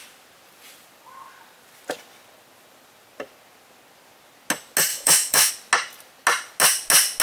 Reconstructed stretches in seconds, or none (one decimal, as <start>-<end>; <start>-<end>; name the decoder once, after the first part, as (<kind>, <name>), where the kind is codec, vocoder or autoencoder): 4.9-5.5 (autoencoder, DAC-VAE)